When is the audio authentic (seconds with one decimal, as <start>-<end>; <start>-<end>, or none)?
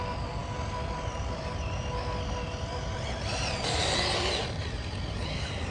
0.0-5.7